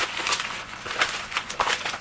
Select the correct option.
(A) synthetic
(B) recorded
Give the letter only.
A